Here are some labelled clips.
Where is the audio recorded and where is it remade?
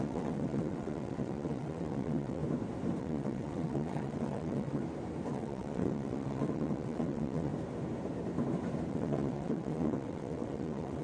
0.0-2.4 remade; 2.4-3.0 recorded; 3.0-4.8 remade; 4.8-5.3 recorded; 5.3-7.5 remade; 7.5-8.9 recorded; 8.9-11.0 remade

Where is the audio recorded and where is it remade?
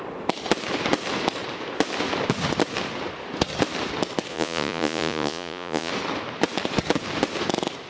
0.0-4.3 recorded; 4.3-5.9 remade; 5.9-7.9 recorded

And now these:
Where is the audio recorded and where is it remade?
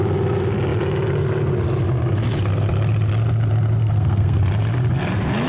0.0-3.8 recorded; 3.8-4.4 remade; 4.4-5.5 recorded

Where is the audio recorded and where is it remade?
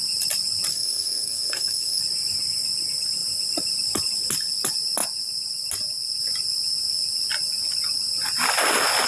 0.0-0.7 recorded; 0.7-2.0 remade; 2.0-9.1 recorded